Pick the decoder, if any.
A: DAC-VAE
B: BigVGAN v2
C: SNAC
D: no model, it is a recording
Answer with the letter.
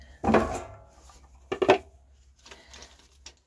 D